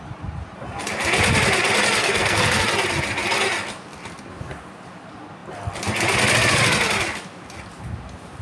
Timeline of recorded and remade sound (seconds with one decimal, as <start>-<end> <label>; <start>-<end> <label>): 0.0-2.0 recorded; 2.0-2.6 remade; 2.6-8.4 recorded